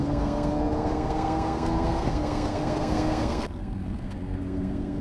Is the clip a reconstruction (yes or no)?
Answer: yes